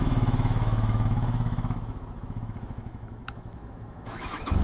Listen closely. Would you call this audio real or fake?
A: fake